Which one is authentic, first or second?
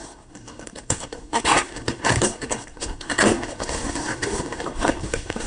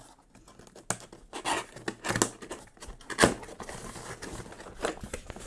second